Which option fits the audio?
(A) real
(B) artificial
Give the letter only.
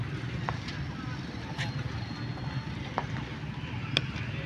A